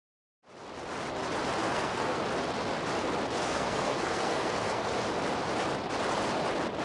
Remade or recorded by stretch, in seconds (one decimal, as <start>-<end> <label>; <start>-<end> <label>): 0.0-1.6 recorded; 1.6-2.2 remade; 2.2-3.4 recorded; 3.4-4.9 remade; 4.9-6.8 recorded